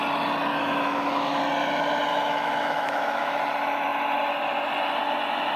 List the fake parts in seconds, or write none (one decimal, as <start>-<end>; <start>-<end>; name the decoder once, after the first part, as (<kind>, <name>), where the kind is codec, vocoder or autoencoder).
0.5-1.4 (autoencoder, DAC-VAE); 2.1-3.4